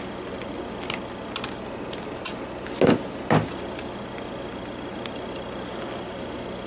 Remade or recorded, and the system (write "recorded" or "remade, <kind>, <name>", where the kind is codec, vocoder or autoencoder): recorded